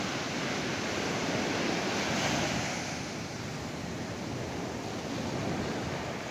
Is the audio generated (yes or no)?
no